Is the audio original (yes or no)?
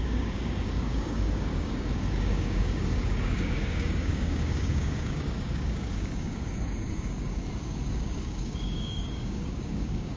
no